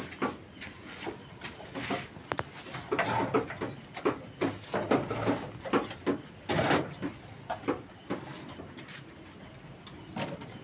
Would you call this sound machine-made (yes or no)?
no